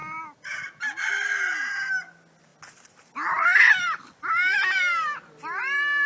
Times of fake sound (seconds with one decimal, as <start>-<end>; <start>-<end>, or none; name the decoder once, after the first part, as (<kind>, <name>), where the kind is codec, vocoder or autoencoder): none